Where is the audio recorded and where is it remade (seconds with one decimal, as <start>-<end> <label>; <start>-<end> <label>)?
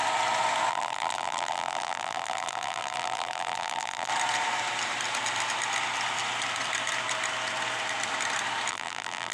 0.0-0.7 recorded; 0.7-4.1 remade; 4.1-8.7 recorded; 8.7-9.3 remade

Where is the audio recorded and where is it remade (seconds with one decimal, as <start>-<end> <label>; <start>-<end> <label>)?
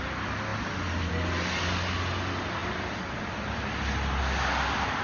0.0-5.0 recorded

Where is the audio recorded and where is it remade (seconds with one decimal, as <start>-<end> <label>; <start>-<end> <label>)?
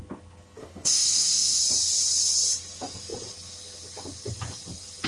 0.0-0.6 recorded; 0.6-1.6 remade; 1.6-5.1 recorded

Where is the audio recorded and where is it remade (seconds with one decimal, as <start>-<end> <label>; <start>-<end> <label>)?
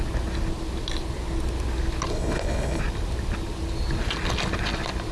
0.0-2.1 recorded; 2.1-2.8 remade; 2.8-5.1 recorded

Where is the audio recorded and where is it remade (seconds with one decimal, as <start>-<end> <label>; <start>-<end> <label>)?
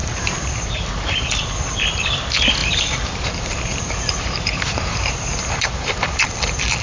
0.0-1.2 remade; 1.2-2.6 recorded; 2.6-6.2 remade; 6.2-6.8 recorded